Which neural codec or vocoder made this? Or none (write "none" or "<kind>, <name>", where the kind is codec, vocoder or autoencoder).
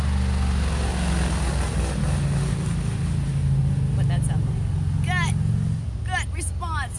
none